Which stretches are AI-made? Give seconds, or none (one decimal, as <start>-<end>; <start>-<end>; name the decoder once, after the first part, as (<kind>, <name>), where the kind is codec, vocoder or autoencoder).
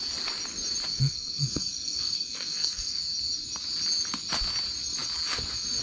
0.9-3.0 (codec, SNAC)